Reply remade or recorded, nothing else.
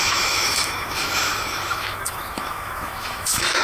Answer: remade